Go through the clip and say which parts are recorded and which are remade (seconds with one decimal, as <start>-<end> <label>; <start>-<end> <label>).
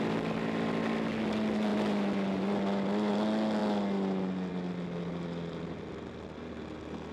0.0-7.1 recorded